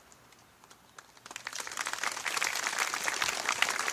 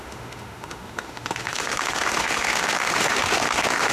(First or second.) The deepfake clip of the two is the second